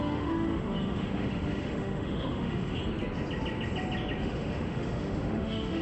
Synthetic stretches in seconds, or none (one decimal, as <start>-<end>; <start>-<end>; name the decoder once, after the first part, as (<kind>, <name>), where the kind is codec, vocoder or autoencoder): 0.0-2.8 (autoencoder, DAC-VAE); 4.2-5.8